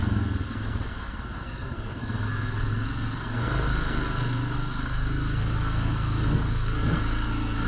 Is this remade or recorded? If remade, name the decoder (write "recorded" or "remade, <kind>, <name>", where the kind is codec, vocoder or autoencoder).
remade, codec, SNAC